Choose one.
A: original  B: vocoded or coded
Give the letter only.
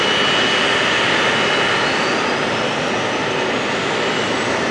A